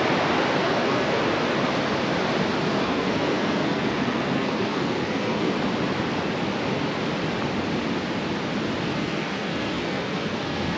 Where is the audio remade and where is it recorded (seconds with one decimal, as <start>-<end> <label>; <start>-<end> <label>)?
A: 0.0-0.6 recorded; 0.6-1.2 remade; 1.2-2.7 recorded; 2.7-5.5 remade; 5.5-8.9 recorded; 8.9-10.8 remade